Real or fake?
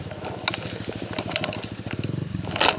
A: real